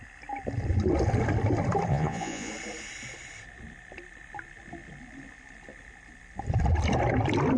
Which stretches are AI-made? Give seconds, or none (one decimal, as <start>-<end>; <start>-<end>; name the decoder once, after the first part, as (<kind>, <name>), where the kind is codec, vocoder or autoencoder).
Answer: 1.9-2.5 (vocoder, Vocos)